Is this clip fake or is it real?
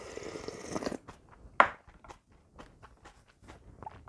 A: real